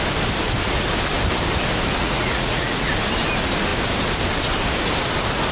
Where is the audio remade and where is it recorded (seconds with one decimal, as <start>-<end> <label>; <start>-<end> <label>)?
0.0-2.0 recorded; 2.0-2.9 remade; 2.9-5.5 recorded